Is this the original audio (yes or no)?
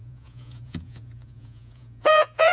no